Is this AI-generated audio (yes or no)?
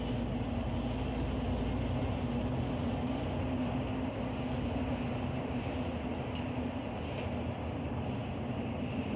no